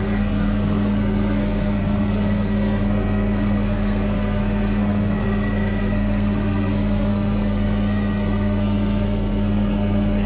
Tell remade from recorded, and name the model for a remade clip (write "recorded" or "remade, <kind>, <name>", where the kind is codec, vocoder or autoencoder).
remade, codec, SNAC